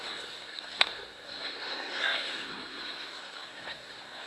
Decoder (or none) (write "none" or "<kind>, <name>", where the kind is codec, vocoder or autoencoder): codec, SNAC